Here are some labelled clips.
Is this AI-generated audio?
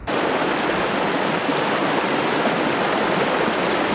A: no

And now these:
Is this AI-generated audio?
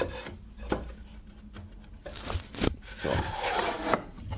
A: no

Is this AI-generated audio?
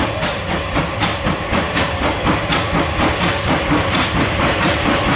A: no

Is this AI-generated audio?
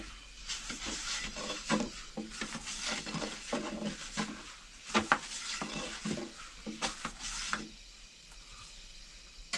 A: no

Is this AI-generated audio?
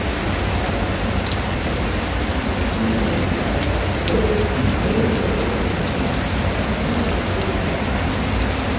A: no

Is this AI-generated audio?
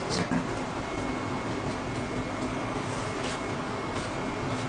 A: no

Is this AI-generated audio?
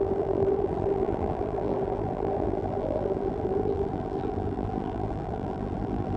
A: yes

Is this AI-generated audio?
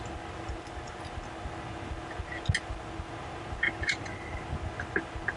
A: no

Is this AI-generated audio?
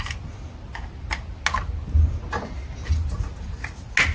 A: no